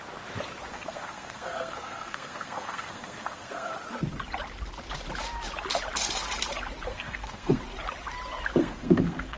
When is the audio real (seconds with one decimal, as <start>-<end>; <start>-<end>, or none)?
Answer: 0.0-0.7; 3.7-6.9; 7.6-8.6